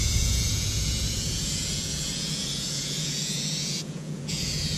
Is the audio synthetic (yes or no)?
yes